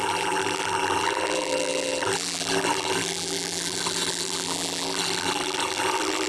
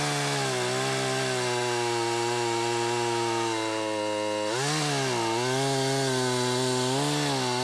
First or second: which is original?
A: second